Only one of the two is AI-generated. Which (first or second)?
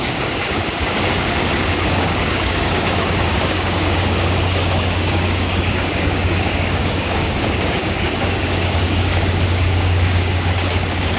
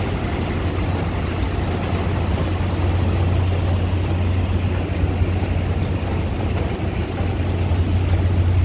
first